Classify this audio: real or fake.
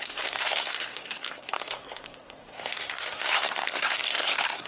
fake